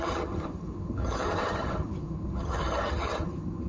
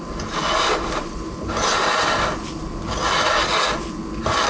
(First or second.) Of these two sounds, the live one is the second